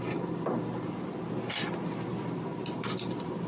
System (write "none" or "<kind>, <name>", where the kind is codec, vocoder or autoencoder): none